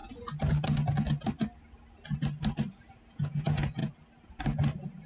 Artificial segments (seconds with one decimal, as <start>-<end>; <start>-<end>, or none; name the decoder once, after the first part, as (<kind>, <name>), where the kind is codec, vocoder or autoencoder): 3.1-3.8 (vocoder, Vocos)